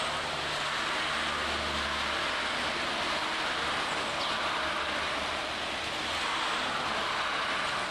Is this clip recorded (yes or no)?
yes